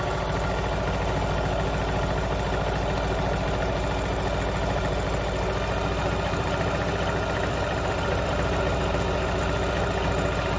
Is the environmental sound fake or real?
real